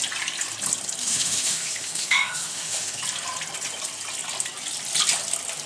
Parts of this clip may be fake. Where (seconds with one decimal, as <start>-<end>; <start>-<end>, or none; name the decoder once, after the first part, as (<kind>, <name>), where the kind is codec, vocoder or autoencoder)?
1.0-3.0 (autoencoder, DAC-VAE)